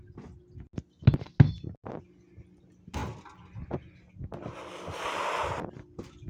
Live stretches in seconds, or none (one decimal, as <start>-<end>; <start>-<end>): 0.0-6.3